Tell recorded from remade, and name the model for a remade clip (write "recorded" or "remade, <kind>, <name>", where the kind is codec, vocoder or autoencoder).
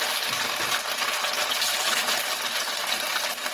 recorded